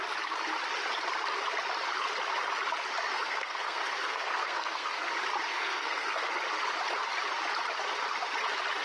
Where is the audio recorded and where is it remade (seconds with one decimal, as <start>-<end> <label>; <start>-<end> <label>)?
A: 0.0-3.1 recorded; 3.1-5.1 remade; 5.1-5.5 recorded; 5.5-6.3 remade; 6.3-8.8 recorded